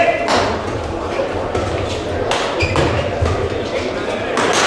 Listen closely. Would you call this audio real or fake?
real